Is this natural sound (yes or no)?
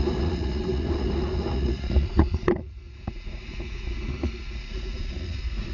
no